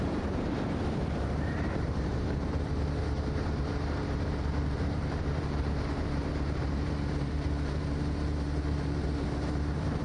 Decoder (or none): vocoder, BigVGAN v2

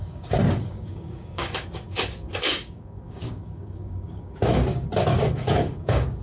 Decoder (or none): codec, DAC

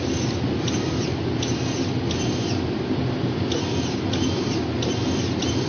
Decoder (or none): none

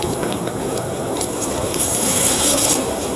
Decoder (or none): codec, SNAC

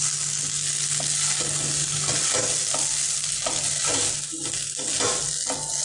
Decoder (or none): none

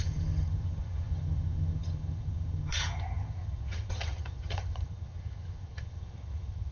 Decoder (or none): vocoder, HiFi-GAN